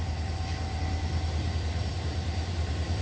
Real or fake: fake